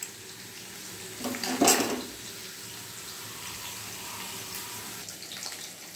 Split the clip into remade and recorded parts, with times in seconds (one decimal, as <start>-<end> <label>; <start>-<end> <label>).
0.0-6.0 recorded